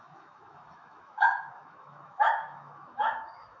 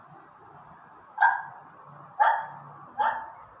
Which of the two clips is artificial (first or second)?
first